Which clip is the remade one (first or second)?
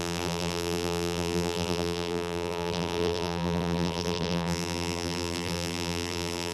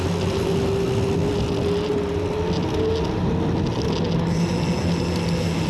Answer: first